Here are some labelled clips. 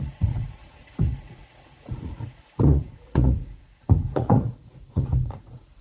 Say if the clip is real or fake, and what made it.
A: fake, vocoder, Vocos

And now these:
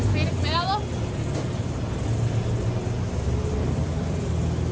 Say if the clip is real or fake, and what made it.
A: real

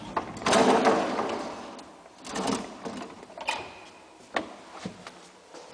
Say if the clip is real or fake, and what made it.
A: real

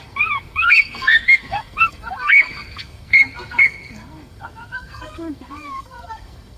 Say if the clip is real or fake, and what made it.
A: fake, codec, SNAC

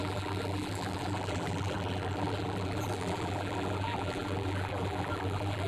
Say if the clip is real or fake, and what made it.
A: fake, vocoder, BigVGAN v2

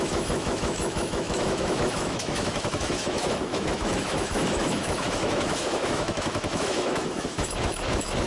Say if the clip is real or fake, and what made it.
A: fake, autoencoder, DAC-VAE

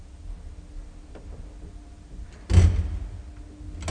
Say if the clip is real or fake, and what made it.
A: real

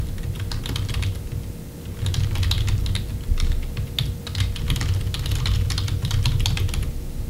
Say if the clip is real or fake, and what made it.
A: real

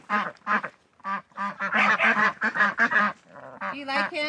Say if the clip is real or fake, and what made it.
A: real